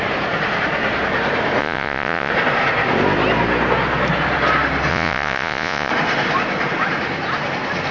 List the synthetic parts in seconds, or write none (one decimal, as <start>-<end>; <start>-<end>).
1.6-2.3; 4.9-5.9